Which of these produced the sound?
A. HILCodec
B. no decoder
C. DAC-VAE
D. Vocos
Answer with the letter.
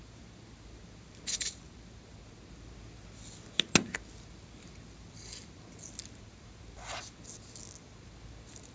B